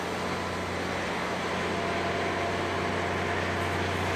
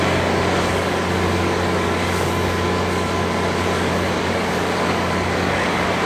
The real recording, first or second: first